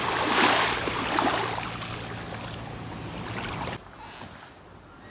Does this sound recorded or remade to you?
recorded